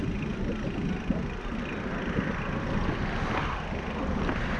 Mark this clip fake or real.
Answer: real